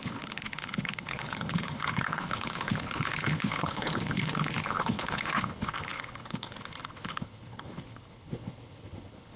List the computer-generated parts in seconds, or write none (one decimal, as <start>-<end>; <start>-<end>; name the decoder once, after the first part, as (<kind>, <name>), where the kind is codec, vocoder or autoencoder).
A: 0.0-9.4 (codec, HILCodec)